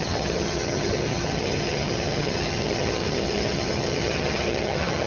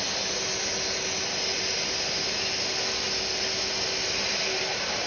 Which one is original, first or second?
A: second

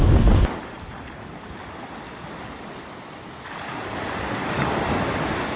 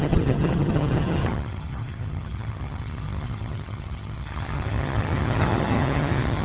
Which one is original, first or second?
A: first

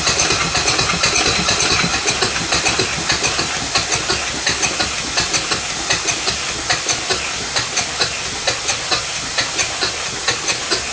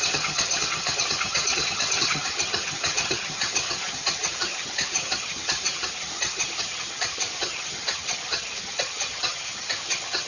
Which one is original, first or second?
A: first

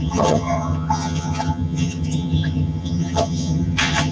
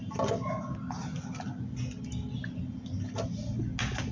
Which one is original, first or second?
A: second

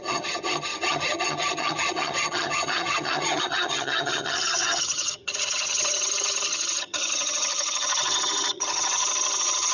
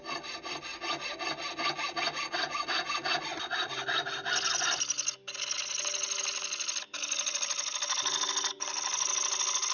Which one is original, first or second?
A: second